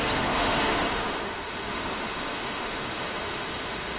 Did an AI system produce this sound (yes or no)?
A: yes